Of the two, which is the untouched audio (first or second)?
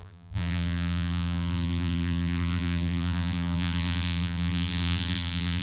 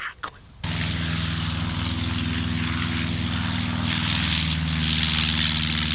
second